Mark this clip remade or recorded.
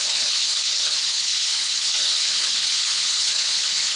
remade